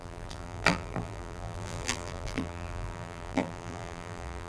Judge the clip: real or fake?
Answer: fake